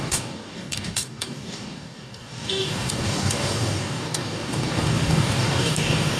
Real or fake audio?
fake